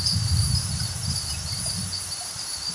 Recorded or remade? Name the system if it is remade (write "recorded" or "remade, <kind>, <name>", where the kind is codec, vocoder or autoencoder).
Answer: remade, vocoder, BigVGAN v2